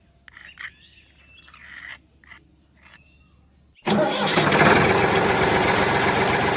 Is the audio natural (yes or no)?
yes